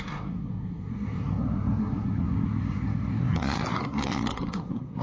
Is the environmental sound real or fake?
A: fake